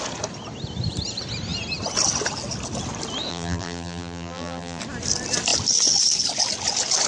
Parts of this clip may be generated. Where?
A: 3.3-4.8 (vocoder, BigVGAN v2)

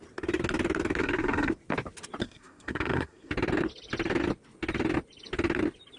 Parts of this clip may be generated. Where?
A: 1.0-1.5 (codec, SNAC); 2.2-3.3

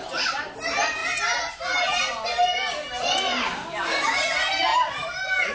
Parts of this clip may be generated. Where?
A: none

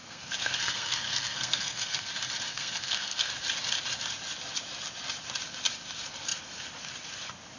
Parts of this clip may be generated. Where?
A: 0.0-2.1 (codec, SNAC); 2.5-3.3

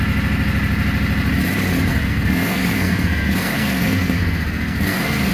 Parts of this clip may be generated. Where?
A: 1.9-5.3 (codec, SNAC)

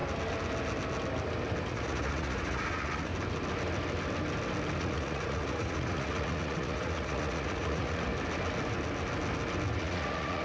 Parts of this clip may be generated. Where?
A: 1.7-3.1 (vocoder, Vocos); 4.8-8.1; 9.8-10.4